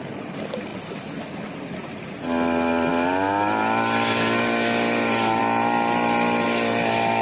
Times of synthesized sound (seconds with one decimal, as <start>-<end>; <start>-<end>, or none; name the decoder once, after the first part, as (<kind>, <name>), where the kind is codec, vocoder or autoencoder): 2.9-5.4 (vocoder, BigVGAN v2)